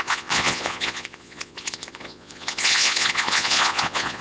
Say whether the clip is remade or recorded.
remade